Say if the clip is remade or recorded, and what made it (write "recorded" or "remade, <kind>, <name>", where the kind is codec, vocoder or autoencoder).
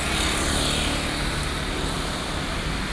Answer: recorded